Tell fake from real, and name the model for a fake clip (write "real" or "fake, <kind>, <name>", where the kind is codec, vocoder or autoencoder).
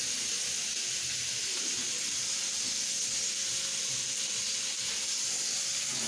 real